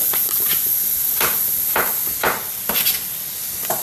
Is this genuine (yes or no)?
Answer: yes